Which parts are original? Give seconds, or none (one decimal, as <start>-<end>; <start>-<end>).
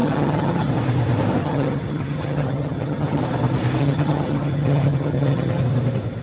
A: 0.7-1.4; 3.2-3.8; 5.6-6.2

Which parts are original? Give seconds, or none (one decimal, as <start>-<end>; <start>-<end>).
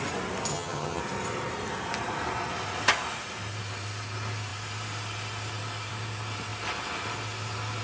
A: 0.0-0.5; 1.0-7.8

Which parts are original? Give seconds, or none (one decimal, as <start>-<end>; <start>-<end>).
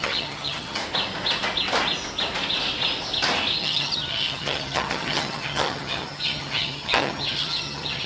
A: 0.8-3.6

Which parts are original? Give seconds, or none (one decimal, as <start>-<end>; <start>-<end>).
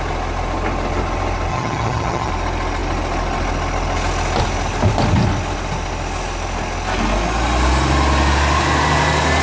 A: 0.0-1.5; 2.3-9.4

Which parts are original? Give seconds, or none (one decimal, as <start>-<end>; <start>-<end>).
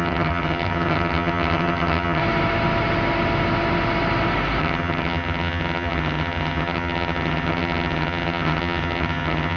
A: 2.2-4.6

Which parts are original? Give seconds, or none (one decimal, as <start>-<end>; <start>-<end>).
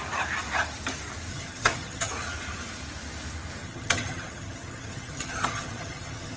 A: 0.0-1.3; 2.1-3.6